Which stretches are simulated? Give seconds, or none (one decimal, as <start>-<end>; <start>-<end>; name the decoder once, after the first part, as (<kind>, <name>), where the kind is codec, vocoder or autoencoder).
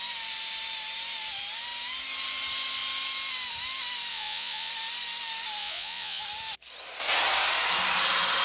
4.1-4.7 (vocoder, Vocos); 5.6-6.2